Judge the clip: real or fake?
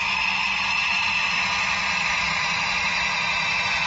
real